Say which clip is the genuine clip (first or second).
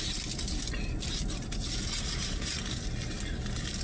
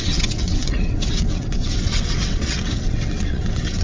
first